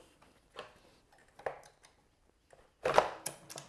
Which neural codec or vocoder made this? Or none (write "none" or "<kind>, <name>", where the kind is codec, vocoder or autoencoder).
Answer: none